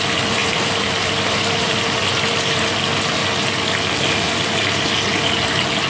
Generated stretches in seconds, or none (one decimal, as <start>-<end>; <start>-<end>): 0.4-2.6